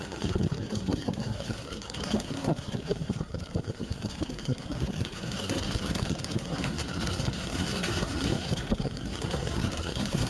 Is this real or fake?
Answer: fake